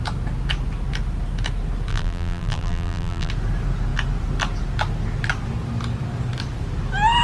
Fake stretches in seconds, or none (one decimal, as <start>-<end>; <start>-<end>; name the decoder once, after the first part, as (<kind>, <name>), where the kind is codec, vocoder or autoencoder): 1.9-3.3 (vocoder, BigVGAN v2)